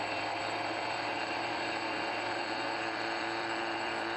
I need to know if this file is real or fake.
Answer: fake